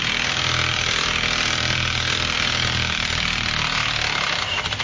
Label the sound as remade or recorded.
remade